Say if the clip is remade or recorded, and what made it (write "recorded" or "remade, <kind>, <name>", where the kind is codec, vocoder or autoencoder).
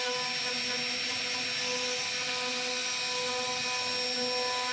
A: recorded